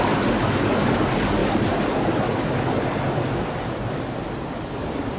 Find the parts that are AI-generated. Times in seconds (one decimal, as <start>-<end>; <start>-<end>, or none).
none